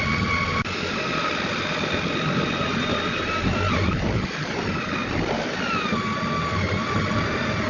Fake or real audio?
real